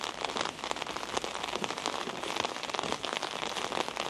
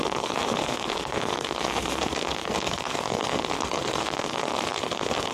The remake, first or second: second